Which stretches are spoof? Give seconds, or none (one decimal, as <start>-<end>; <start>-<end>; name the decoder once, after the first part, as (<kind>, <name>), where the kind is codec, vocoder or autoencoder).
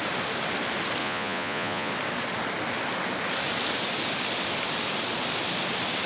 1.0-1.9 (vocoder, Vocos)